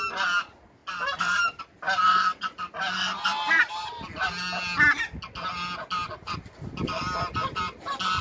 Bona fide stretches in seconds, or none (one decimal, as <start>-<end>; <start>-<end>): 0.0-8.2